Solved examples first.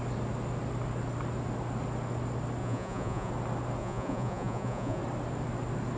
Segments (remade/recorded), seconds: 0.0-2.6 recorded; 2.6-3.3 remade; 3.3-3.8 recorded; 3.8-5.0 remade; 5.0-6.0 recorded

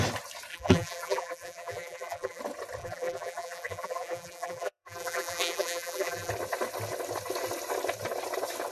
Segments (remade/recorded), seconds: 0.0-0.5 recorded; 0.5-2.4 remade; 2.4-2.8 recorded; 2.8-6.3 remade; 6.3-8.7 recorded

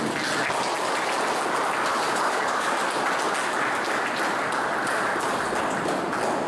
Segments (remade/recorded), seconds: 0.0-1.9 recorded; 1.9-2.8 remade; 2.8-6.5 recorded

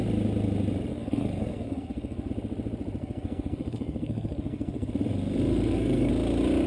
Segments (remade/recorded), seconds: 0.0-0.9 recorded; 0.9-2.3 remade; 2.3-3.0 recorded; 3.0-4.9 remade; 4.9-5.5 recorded; 5.5-6.1 remade; 6.1-6.7 recorded

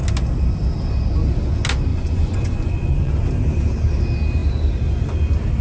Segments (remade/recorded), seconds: 0.0-1.9 recorded; 1.9-3.1 remade; 3.1-5.6 recorded

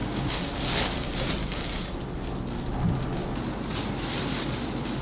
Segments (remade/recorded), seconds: 0.0-0.6 remade; 0.6-1.4 recorded; 1.4-2.0 remade; 2.0-5.0 recorded

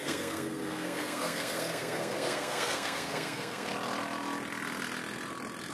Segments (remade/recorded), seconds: 0.0-3.7 remade; 3.7-5.7 recorded

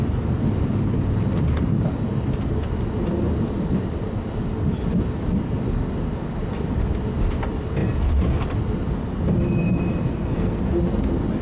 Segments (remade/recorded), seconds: 0.0-10.1 recorded; 10.1-10.6 remade; 10.6-11.4 recorded